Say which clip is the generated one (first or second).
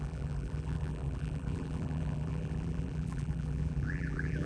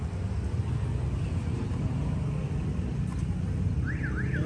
first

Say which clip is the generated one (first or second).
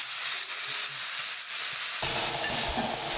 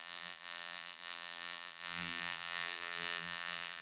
second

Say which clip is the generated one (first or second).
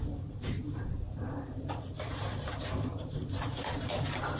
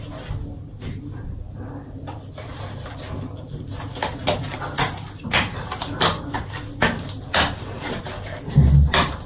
first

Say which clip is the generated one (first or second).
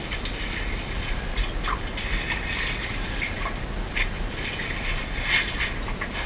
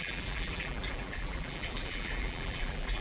second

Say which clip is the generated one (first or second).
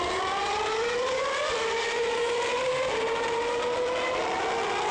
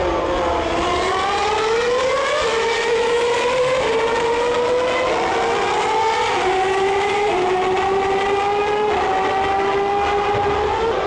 first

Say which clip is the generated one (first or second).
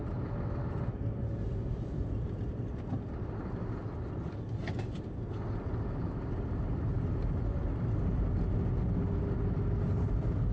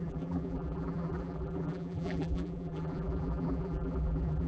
second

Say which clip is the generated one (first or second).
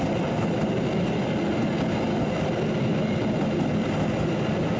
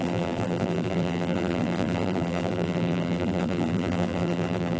second